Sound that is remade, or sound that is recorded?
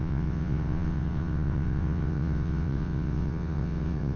remade